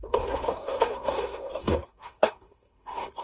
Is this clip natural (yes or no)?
no